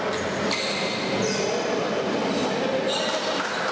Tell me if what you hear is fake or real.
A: real